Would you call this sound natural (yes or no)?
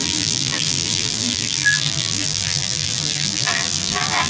no